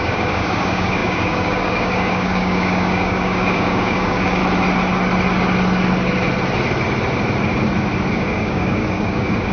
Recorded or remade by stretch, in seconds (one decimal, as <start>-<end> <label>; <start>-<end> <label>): 0.0-4.4 remade; 4.4-8.1 recorded; 8.1-9.5 remade